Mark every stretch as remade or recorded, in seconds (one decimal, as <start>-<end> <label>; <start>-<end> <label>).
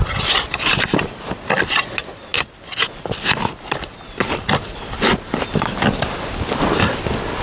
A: 0.0-7.4 recorded